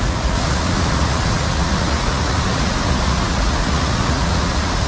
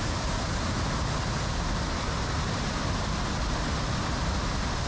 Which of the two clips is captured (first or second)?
second